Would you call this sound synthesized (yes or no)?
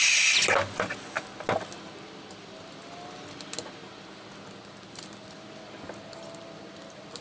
no